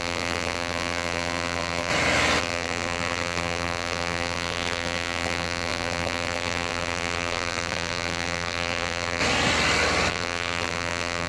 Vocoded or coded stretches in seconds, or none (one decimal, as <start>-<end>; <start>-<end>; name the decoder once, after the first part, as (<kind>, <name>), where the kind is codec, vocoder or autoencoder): 0.0-1.9 (vocoder, BigVGAN v2); 2.4-9.2; 10.1-11.3